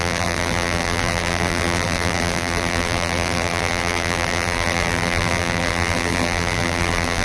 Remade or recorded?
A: remade